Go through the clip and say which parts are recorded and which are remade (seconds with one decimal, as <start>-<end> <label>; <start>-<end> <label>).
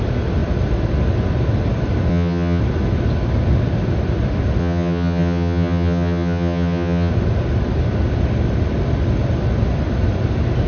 0.0-2.1 recorded; 2.1-2.6 remade; 2.6-4.6 recorded; 4.6-7.1 remade; 7.1-10.7 recorded